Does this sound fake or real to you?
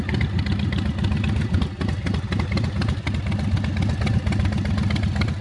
real